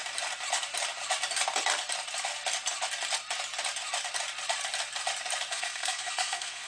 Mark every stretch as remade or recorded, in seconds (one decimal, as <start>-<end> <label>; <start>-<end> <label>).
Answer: 0.0-5.5 recorded; 5.5-6.7 remade